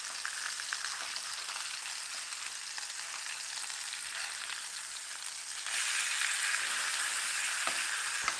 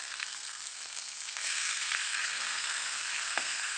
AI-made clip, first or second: second